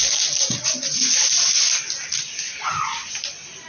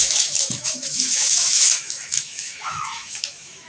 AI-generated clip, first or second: second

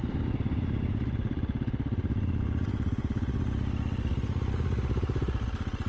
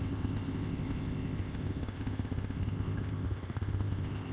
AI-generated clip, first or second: second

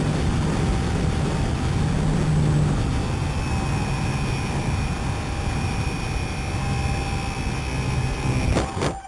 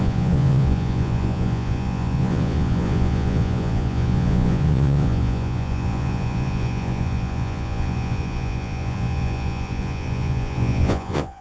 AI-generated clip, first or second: second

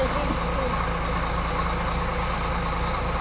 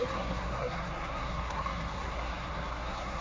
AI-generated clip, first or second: second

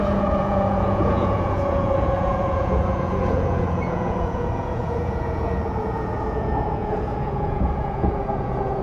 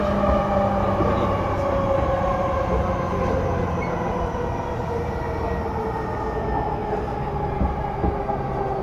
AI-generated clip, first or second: first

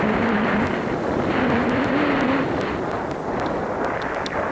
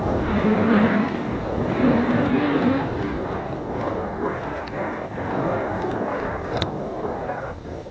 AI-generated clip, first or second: second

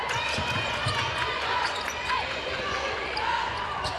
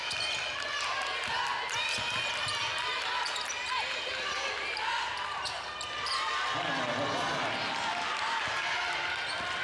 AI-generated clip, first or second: first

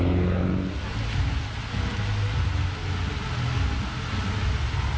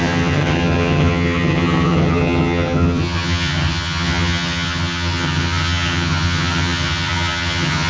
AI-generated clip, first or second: second